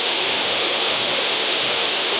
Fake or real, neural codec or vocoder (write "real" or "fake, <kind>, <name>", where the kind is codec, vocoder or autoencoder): fake, autoencoder, DAC-VAE